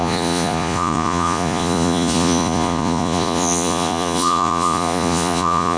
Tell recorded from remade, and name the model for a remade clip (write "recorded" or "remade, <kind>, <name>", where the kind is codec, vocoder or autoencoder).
remade, vocoder, Vocos